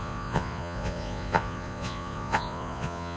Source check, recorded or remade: remade